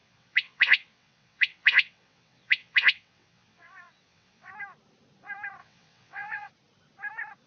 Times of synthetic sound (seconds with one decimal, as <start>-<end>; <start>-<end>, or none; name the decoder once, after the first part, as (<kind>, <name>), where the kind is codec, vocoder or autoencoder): 0.0-4.5 (vocoder, WaveNeXt); 5.6-6.5